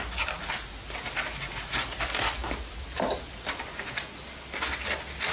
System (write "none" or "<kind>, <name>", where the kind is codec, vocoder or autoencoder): none